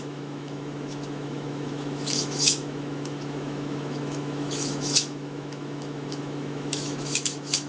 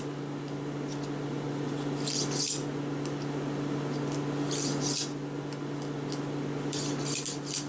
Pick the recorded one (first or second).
second